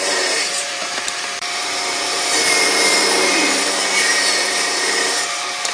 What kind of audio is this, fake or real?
fake